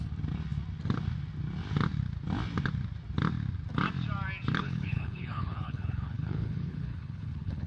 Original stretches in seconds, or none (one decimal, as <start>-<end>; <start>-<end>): 0.0-4.6